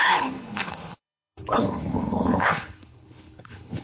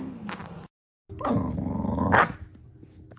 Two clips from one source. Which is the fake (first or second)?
first